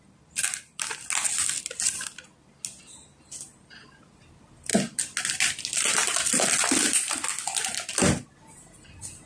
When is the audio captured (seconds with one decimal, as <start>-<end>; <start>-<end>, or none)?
0.0-9.3